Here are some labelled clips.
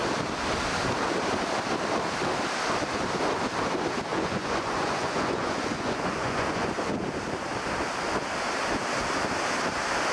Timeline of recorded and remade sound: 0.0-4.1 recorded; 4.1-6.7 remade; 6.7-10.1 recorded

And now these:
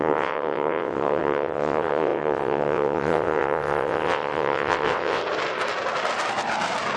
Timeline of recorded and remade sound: 0.0-5.2 remade; 5.2-7.0 recorded

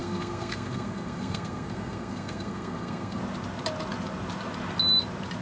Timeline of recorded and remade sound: 0.0-3.2 remade; 3.2-5.4 recorded

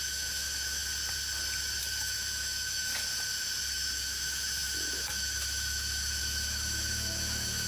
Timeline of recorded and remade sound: 0.0-0.8 remade; 0.8-1.8 recorded; 1.8-2.9 remade; 2.9-3.7 recorded; 3.7-7.7 remade